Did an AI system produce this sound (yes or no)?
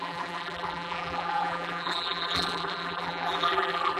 yes